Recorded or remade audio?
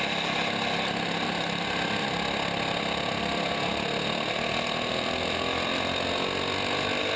recorded